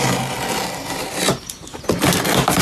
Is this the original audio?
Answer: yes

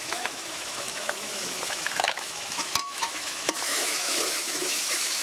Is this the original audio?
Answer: no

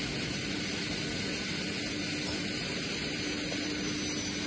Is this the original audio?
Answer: yes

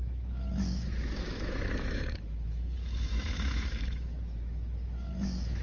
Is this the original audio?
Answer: no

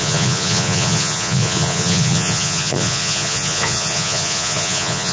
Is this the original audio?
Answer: no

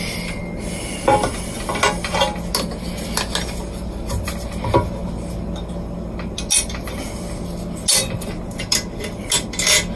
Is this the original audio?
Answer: yes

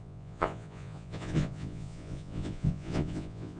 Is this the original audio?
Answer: no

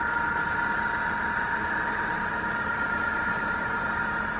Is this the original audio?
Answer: yes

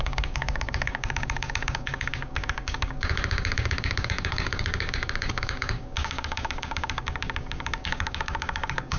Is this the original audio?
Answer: no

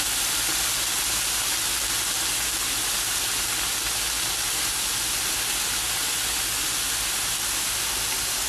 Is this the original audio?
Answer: yes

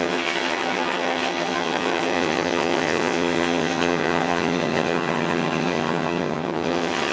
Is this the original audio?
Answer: no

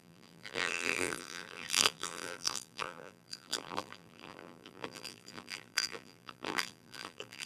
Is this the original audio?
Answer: no